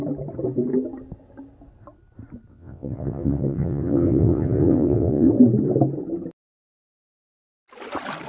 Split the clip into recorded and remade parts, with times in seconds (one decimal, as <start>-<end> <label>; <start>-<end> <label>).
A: 0.0-2.5 recorded; 2.5-5.3 remade; 5.3-8.3 recorded